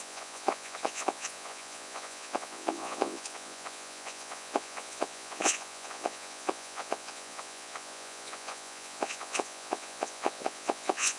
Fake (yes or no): yes